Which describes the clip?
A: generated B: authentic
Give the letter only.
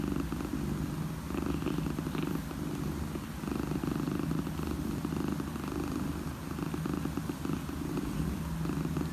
B